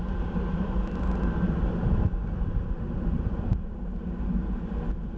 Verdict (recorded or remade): recorded